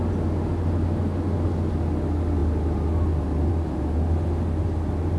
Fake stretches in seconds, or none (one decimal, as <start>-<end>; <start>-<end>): none